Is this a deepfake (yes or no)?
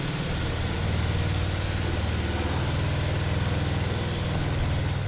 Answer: no